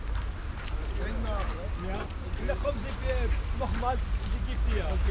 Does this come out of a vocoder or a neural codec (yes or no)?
no